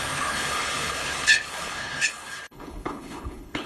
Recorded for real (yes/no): no